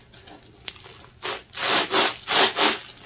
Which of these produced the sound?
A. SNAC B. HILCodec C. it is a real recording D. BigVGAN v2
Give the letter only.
C